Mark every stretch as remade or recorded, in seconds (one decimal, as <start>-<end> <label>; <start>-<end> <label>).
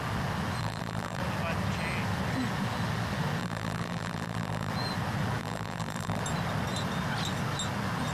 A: 0.0-0.6 recorded; 0.6-1.2 remade; 1.2-3.4 recorded; 3.4-4.7 remade; 4.7-5.4 recorded; 5.4-6.2 remade; 6.2-8.1 recorded